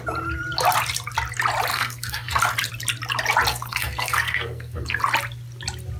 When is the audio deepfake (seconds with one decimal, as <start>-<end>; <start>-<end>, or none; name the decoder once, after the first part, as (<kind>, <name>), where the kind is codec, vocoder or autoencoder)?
1.7-2.4 (codec, SNAC); 3.5-5.0